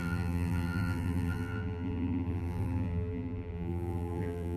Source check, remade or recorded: remade